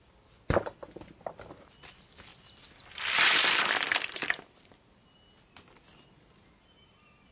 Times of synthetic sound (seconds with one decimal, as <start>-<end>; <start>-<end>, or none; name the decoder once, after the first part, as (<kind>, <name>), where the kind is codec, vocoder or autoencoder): 2.3-4.7 (vocoder, BigVGAN v2)